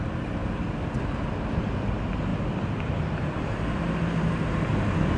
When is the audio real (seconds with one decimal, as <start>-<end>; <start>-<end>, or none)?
0.0-5.2